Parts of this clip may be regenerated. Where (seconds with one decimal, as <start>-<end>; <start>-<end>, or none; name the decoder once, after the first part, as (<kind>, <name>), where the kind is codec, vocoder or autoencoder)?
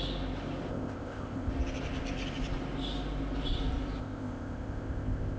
0.7-1.5 (codec, ZipCodec); 4.0-5.4